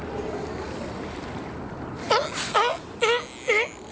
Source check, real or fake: real